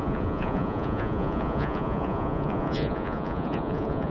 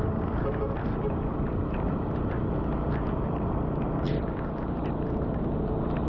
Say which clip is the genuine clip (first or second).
second